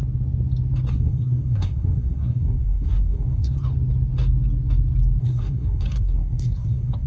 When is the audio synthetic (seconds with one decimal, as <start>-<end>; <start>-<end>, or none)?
0.9-3.6; 5.2-7.1